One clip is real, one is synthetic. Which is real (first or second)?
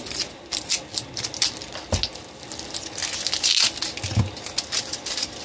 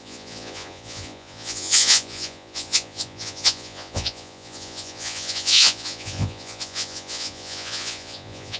first